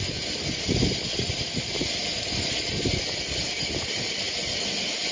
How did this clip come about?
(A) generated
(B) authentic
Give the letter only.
B